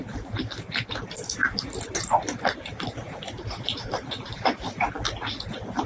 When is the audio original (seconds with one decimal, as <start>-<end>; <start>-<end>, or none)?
0.0-1.4; 4.9-5.9